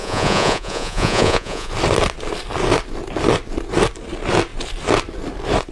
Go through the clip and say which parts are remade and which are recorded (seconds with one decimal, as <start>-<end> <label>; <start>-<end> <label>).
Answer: 0.0-1.7 remade; 1.7-5.7 recorded

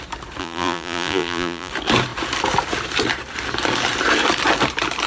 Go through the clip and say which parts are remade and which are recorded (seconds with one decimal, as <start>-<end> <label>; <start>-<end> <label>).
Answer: 0.0-0.4 recorded; 0.4-1.7 remade; 1.7-5.1 recorded

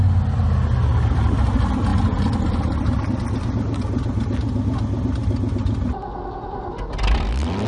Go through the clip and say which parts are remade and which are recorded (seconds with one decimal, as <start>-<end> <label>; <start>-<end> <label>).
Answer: 0.0-7.7 recorded

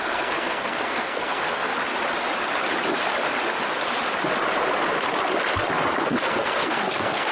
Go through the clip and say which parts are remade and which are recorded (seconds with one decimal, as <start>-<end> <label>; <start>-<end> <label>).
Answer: 0.0-1.7 remade; 1.7-6.0 recorded; 6.0-7.3 remade

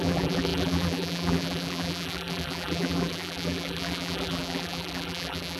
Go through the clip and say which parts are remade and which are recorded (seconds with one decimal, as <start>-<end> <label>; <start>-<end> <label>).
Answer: 0.0-5.6 remade

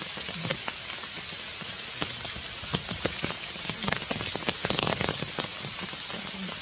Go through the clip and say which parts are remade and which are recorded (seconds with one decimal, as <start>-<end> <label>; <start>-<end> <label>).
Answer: 0.0-2.7 recorded; 2.7-3.3 remade; 3.3-6.6 recorded

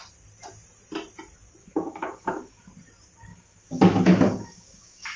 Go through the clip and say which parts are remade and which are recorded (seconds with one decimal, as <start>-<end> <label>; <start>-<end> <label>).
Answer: 0.0-1.6 recorded; 1.6-2.7 remade; 2.7-3.3 recorded; 3.3-5.2 remade